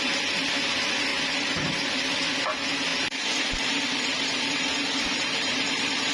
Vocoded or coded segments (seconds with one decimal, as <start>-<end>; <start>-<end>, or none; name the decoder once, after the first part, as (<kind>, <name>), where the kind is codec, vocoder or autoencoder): 1.1-1.9 (vocoder, BigVGAN v2); 2.9-6.1